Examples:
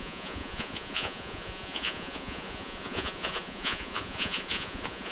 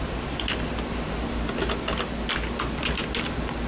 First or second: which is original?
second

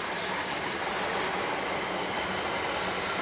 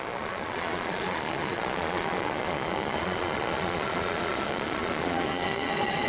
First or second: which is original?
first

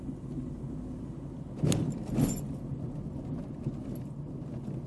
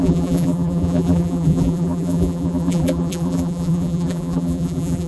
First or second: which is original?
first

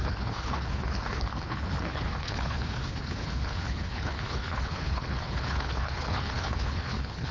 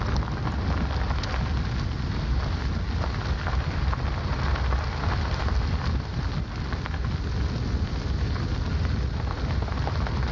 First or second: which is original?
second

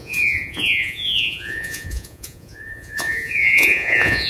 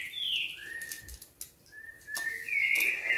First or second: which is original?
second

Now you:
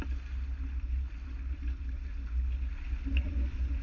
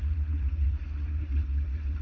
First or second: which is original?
first